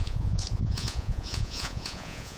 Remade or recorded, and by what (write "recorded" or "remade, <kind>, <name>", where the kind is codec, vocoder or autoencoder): remade, vocoder, Vocos